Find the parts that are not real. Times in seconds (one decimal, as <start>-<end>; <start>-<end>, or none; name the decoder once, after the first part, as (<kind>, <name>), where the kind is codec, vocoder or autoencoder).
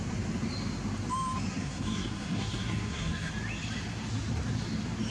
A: 1.5-3.3 (codec, SNAC)